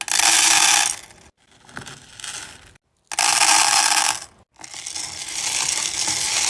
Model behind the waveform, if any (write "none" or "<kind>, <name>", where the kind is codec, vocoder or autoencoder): none